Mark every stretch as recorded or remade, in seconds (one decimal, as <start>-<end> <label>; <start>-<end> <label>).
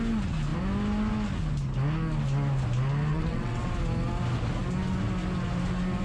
0.0-3.1 recorded; 3.1-3.7 remade; 3.7-6.0 recorded